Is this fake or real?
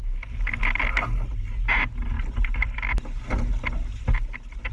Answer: real